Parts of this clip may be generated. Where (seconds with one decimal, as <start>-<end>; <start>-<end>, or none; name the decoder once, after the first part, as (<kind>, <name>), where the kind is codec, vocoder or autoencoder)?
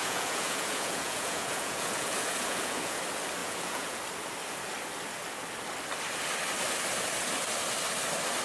0.0-3.0 (vocoder, Vocos); 3.4-4.0